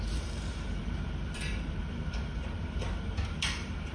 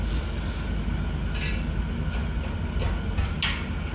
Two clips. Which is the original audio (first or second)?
second